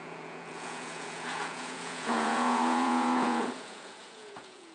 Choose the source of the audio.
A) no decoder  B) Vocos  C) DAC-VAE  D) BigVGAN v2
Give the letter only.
B